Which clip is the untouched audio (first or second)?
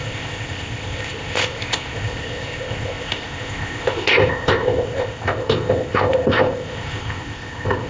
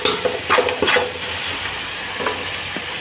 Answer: second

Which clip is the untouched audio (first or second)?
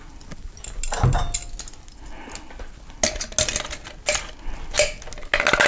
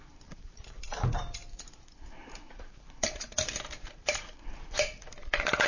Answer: first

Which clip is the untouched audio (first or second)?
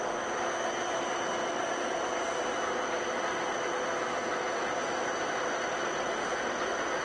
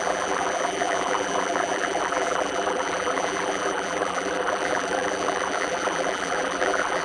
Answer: first